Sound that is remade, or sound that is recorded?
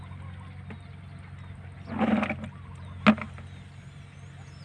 recorded